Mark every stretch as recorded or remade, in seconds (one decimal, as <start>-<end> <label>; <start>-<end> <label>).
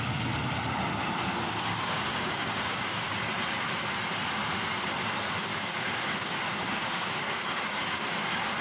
0.0-1.3 recorded; 1.3-3.2 remade; 3.2-5.5 recorded; 5.5-8.1 remade; 8.1-8.6 recorded